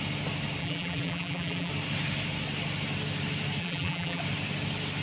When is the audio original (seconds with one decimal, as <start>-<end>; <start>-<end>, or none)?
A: 0.0-0.6; 1.7-3.6; 4.2-5.0